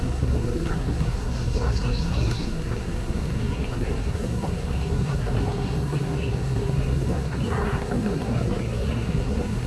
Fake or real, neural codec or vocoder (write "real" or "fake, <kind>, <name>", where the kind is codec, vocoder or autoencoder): fake, codec, SNAC